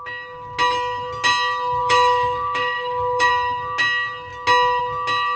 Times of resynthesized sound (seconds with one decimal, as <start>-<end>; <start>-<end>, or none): 1.8-3.3